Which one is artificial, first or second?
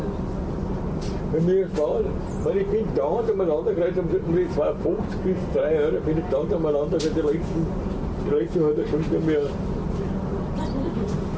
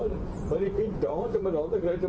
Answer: second